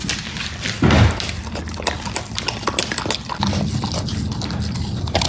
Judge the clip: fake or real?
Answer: real